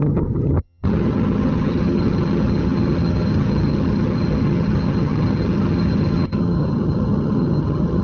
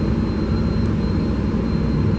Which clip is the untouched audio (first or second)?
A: second